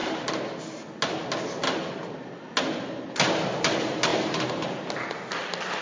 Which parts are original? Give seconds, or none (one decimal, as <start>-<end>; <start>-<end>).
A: 0.0-5.8